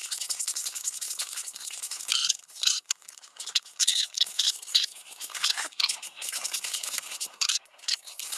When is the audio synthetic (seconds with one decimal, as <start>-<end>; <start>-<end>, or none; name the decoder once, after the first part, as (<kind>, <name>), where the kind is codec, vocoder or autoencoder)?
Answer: 0.0-8.4 (codec, SNAC)

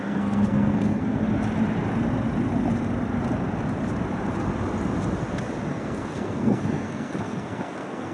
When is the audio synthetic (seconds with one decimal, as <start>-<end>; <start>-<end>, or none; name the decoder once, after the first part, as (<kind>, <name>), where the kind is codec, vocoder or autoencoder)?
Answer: 0.0-1.2 (codec, SNAC); 5.7-8.1